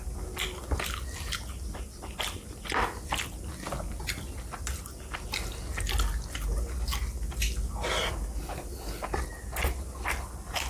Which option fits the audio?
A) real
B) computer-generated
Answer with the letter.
A